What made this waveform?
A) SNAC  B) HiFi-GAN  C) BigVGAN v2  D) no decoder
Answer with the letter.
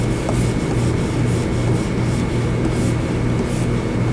D